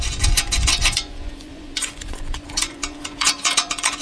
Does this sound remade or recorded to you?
remade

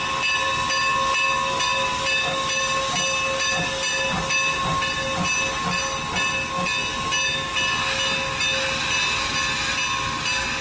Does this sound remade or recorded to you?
recorded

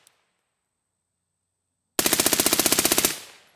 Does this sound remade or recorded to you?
recorded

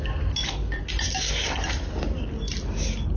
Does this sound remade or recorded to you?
recorded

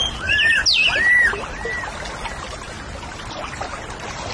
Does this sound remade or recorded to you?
recorded